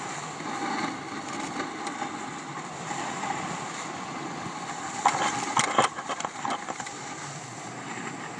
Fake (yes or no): no